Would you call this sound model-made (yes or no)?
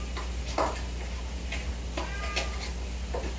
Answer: no